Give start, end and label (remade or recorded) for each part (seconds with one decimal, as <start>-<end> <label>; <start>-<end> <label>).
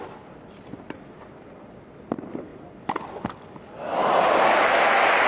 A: 0.0-5.3 recorded